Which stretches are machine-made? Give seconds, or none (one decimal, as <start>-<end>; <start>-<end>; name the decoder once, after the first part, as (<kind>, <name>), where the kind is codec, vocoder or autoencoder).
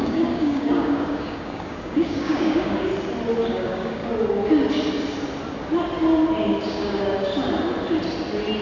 0.0-2.9 (codec, DAC); 3.5-4.0; 6.7-7.3